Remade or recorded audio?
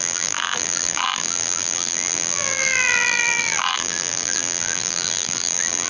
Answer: remade